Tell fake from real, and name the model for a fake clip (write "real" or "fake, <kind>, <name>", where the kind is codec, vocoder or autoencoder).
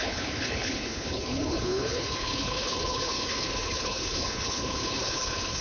fake, codec, HILCodec